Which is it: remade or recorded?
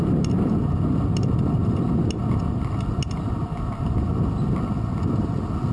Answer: recorded